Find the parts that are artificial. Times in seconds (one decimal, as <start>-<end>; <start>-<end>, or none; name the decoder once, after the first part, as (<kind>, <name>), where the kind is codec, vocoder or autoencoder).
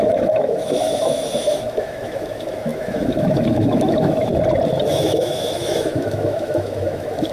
0.0-4.3 (autoencoder, DAC-VAE); 4.9-7.3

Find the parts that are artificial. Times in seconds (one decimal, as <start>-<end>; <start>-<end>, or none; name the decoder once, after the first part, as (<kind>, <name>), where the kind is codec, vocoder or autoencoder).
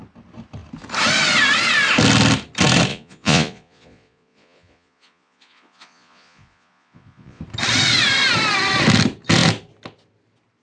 2.9-7.4 (vocoder, Vocos)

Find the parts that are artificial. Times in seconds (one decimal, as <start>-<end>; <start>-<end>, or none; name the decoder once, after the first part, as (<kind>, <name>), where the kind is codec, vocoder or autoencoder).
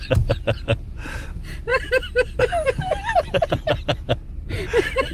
none